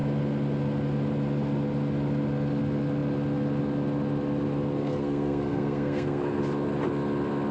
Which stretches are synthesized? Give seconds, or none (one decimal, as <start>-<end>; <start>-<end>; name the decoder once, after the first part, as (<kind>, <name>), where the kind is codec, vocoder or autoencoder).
4.8-6.4 (codec, SNAC)